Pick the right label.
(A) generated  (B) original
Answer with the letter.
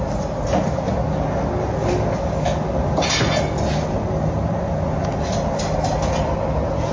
B